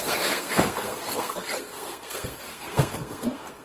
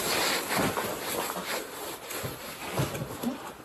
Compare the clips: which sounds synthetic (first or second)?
first